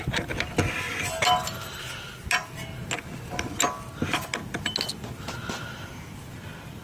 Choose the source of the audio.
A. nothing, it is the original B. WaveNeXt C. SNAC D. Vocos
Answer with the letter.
A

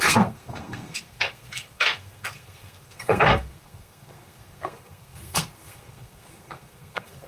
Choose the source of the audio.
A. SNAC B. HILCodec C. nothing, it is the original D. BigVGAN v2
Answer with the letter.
A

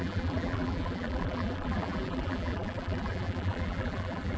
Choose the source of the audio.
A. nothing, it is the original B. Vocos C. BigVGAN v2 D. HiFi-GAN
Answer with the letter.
C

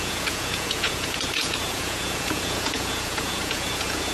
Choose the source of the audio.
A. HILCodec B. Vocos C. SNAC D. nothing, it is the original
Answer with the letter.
B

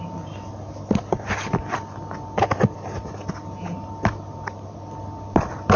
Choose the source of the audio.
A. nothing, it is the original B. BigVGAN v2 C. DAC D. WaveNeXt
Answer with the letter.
A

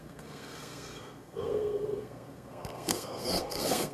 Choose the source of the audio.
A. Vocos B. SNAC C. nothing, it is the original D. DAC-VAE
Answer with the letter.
B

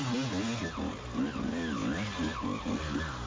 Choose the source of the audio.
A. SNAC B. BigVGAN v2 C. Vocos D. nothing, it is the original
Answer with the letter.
D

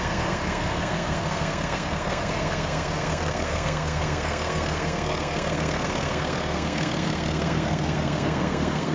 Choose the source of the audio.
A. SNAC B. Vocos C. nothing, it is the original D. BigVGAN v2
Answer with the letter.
A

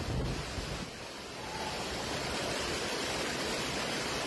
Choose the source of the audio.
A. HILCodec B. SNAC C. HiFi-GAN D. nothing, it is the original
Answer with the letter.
D